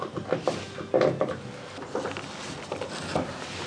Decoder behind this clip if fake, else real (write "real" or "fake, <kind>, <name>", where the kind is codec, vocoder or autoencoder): real